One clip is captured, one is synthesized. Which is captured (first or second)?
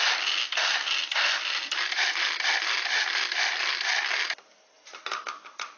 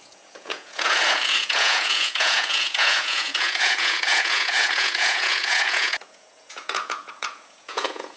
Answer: first